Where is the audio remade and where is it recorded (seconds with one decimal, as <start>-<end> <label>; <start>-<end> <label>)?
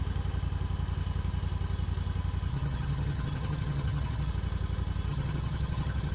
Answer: 0.0-2.5 recorded; 2.5-4.3 remade; 4.3-5.1 recorded; 5.1-6.1 remade